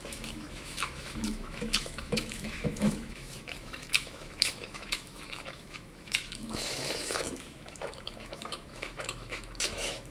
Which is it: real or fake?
fake